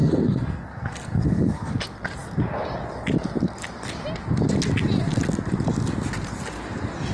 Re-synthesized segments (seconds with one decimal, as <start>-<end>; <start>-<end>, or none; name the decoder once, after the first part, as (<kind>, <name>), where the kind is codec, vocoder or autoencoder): 0.0-1.7 (codec, SNAC)